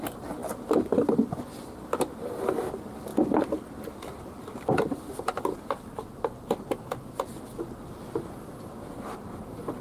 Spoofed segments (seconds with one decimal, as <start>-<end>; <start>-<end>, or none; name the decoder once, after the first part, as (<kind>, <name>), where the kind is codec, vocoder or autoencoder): none